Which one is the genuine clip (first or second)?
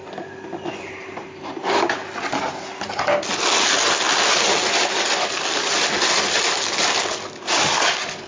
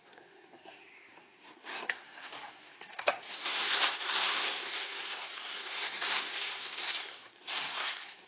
first